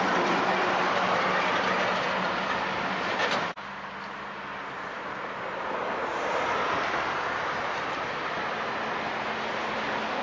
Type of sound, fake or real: real